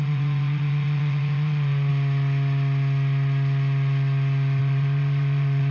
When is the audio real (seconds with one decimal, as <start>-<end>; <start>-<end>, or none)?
1.9-4.6

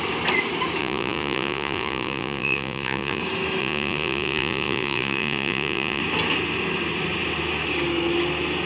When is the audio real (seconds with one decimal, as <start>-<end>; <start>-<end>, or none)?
0.0-0.8; 3.2-3.6; 6.0-8.7